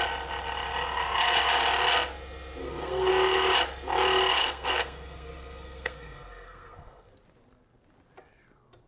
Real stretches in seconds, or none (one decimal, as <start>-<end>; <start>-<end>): 0.0-2.6; 3.1-4.4; 7.1-8.9